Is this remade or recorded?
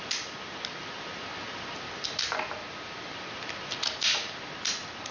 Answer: recorded